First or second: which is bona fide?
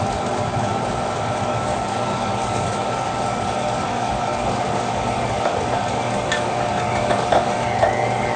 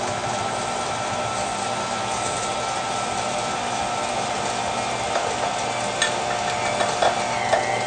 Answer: second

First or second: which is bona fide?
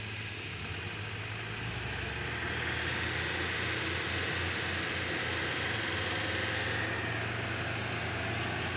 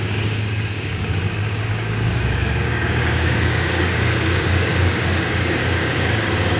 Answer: first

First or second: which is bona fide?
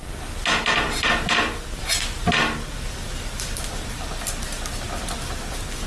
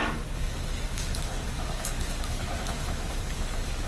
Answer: first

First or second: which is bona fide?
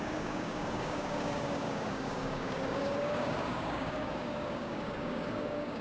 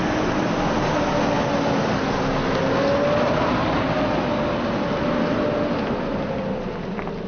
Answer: second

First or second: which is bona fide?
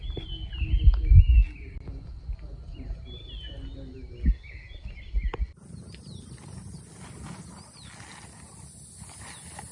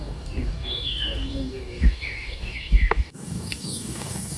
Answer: first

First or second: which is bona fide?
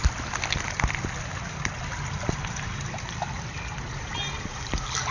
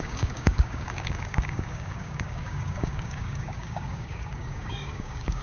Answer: first